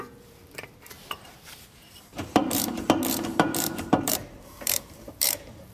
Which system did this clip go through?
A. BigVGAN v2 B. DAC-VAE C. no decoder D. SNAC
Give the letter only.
A